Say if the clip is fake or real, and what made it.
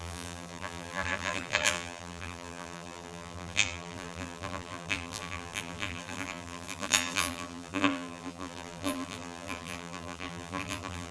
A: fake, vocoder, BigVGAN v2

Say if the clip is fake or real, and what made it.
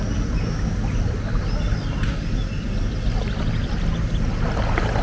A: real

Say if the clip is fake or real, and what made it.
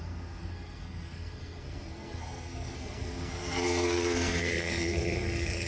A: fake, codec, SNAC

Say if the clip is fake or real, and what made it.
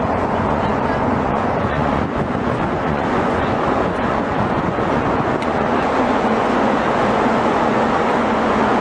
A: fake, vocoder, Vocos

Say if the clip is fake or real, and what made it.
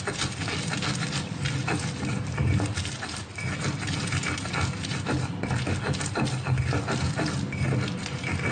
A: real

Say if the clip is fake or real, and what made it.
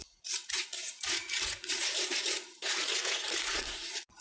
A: fake, vocoder, Vocos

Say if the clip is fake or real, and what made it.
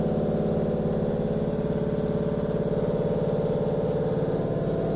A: real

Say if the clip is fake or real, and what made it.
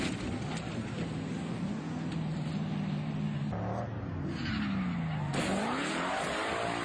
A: real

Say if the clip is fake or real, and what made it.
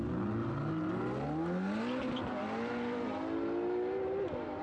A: real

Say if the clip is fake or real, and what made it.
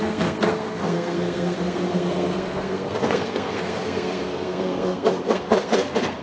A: fake, codec, SNAC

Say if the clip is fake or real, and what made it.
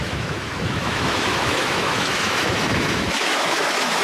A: fake, autoencoder, DAC-VAE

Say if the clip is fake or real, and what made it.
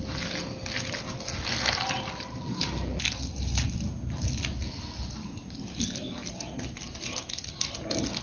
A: real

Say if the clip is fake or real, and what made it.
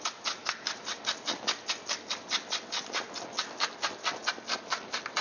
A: real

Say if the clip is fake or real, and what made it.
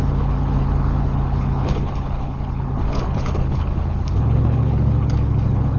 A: fake, codec, HILCodec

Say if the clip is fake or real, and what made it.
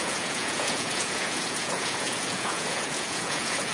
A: fake, vocoder, Vocos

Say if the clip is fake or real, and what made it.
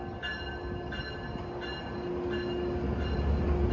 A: real